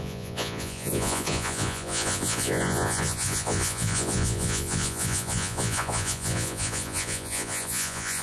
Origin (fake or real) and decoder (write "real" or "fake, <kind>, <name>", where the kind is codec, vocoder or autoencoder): fake, vocoder, Vocos